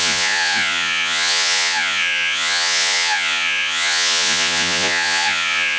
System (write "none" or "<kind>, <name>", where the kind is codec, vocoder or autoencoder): vocoder, Vocos